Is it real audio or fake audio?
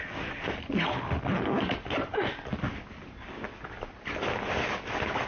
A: real